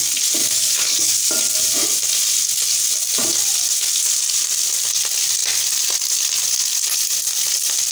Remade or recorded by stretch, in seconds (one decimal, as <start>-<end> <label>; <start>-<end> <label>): 0.0-0.4 recorded; 0.4-1.1 remade; 1.1-7.9 recorded